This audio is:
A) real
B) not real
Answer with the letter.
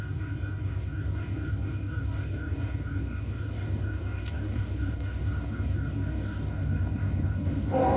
B